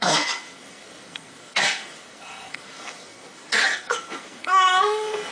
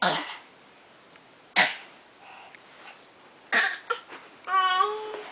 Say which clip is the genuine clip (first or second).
second